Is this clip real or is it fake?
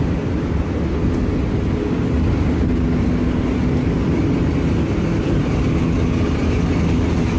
real